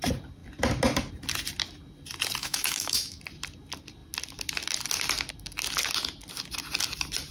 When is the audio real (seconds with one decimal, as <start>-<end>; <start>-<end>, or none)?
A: 0.0-2.4; 3.2-7.3